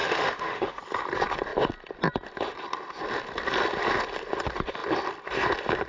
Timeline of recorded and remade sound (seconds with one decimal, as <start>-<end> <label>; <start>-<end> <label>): 0.0-0.8 remade; 0.8-5.9 recorded